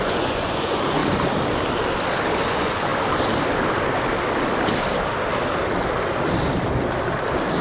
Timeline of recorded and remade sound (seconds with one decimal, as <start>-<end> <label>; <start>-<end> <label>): 0.0-1.0 remade; 1.0-2.5 recorded; 2.5-2.9 remade; 2.9-7.6 recorded